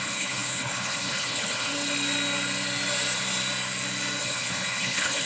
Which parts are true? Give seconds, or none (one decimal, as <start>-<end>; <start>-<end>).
1.7-4.2